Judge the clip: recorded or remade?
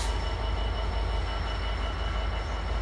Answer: recorded